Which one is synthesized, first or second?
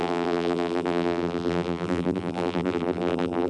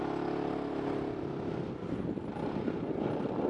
first